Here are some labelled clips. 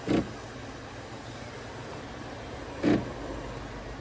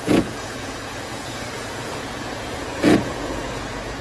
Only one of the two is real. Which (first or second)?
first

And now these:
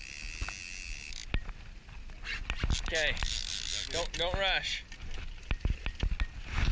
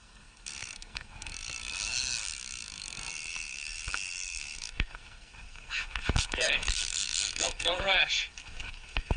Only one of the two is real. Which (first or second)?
first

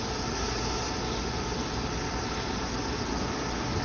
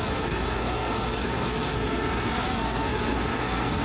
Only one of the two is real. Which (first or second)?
first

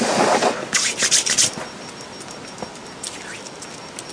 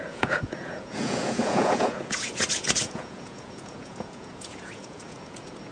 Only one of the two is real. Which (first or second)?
first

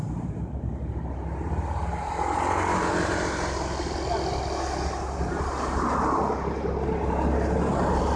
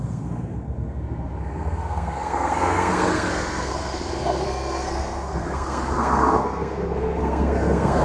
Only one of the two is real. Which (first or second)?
first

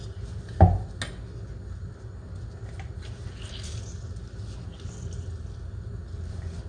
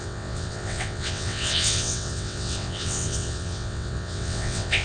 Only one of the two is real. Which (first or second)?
first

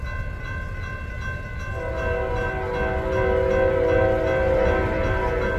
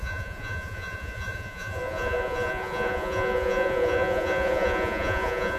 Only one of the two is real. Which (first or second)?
first